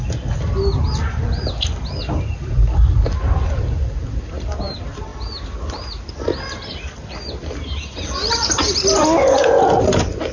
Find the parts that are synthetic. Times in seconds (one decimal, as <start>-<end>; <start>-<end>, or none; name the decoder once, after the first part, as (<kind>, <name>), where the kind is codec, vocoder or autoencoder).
none